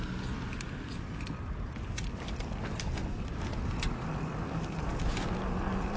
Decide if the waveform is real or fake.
real